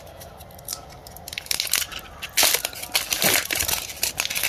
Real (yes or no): yes